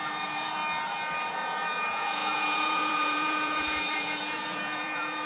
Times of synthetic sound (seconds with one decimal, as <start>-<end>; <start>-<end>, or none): 0.0-0.6; 1.3-5.3